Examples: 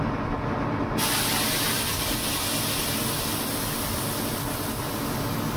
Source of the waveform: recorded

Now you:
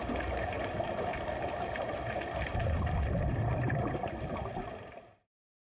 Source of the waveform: remade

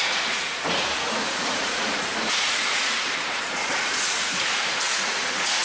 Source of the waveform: remade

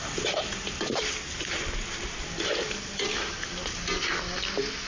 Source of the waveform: recorded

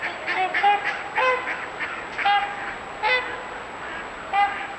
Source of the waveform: recorded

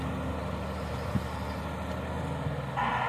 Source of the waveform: recorded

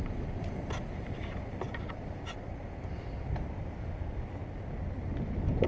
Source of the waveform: recorded